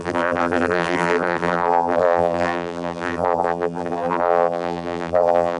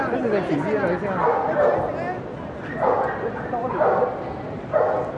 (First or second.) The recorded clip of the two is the second